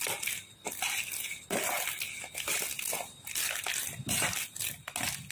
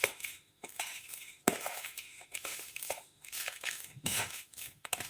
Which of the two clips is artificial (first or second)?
second